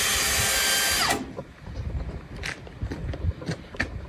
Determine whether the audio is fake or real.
real